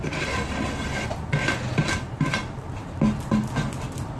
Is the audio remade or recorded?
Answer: recorded